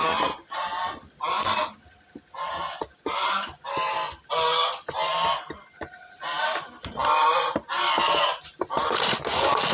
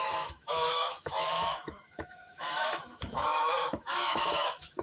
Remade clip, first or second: second